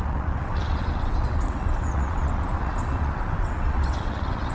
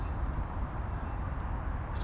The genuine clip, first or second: second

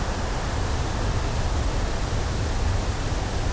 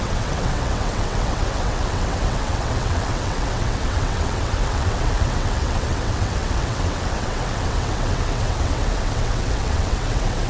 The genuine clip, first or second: first